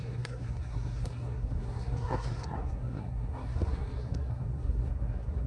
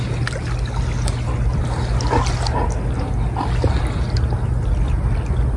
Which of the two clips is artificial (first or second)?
first